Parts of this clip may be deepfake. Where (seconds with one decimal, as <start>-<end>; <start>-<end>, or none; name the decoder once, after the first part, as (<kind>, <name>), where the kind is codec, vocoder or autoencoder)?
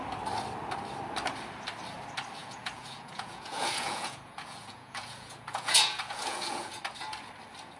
2.4-6.8 (vocoder, Vocos)